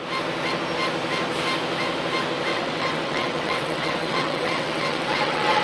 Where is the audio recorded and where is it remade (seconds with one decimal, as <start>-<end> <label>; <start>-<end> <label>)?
0.0-2.5 recorded; 2.5-5.6 remade